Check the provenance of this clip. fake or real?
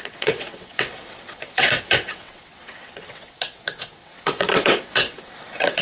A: fake